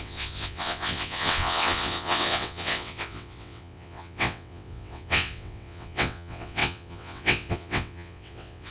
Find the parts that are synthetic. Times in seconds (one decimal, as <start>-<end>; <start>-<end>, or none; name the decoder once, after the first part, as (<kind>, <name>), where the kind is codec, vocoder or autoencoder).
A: 0.0-8.7 (vocoder, WaveNeXt)